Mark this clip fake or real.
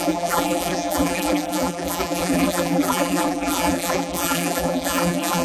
fake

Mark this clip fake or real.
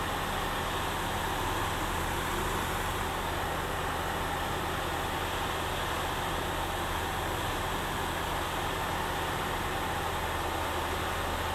real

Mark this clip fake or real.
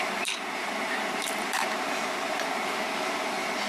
fake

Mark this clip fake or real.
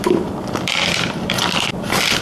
fake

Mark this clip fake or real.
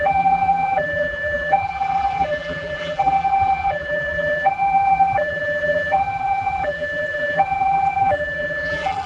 fake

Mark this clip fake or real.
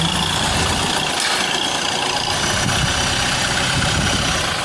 real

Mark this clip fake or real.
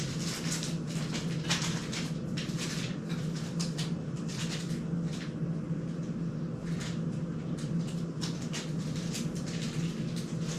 real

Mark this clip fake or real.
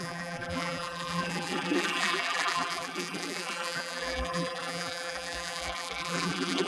fake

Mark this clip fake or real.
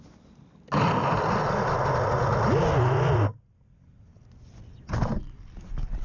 real